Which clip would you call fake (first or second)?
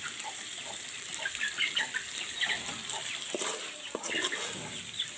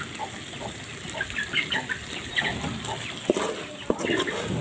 first